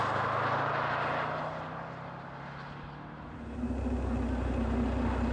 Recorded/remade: recorded